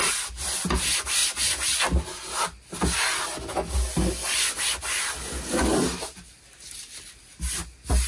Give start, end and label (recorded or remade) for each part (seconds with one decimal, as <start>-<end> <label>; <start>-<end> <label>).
0.0-8.1 recorded